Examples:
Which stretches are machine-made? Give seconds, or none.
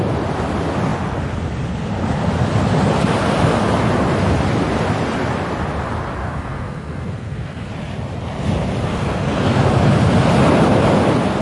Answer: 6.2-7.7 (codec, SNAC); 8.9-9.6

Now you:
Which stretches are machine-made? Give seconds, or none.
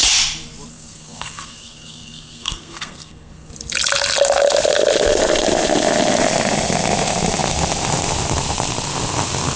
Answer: 0.7-3.5 (codec, SNAC)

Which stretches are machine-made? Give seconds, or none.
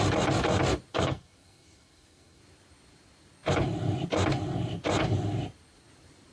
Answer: 0.9-2.4 (codec, SNAC)